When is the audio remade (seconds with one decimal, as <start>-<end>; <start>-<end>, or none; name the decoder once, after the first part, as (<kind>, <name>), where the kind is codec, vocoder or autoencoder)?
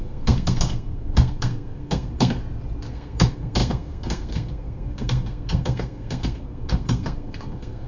0.0-2.4 (codec, SNAC); 2.9-7.9